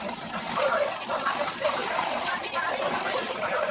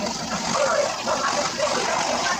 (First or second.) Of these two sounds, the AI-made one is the first